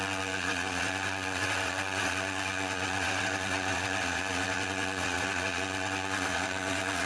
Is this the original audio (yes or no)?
no